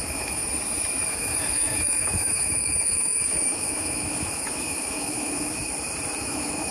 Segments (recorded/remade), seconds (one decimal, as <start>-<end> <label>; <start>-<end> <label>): 0.0-0.4 remade; 0.4-1.1 recorded; 1.1-5.6 remade; 5.6-6.2 recorded; 6.2-6.7 remade